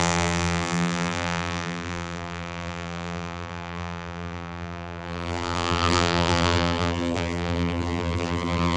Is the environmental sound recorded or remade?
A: remade